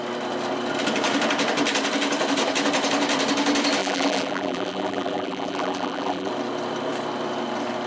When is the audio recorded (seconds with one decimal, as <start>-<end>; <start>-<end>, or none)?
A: 0.0-3.8; 6.3-7.9